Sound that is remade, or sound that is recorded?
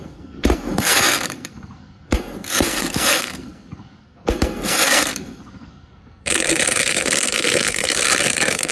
remade